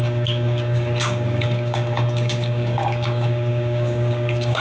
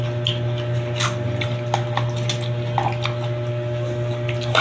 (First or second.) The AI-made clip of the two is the first